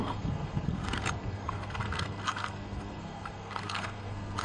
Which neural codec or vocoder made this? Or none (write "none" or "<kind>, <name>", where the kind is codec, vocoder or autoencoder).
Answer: codec, SNAC